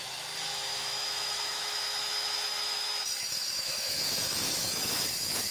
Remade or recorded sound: remade